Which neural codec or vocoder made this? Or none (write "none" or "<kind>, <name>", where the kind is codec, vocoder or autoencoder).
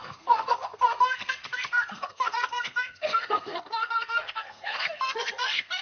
codec, SNAC